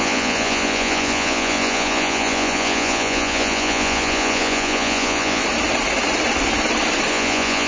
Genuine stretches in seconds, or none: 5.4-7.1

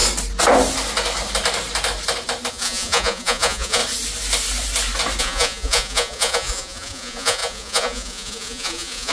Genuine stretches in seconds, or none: 0.0-2.5; 3.8-5.2

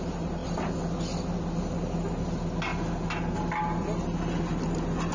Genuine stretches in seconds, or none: 0.0-5.1